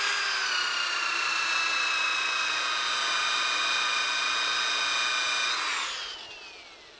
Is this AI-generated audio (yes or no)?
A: no